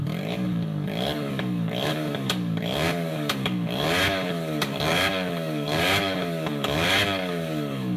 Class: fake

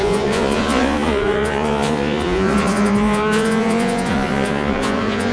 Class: fake